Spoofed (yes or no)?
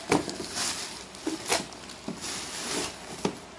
no